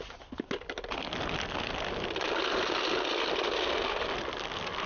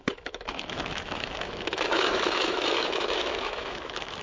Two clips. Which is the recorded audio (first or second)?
first